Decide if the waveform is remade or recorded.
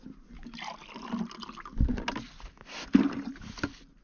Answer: recorded